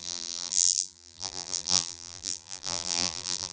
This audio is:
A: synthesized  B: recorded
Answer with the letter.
A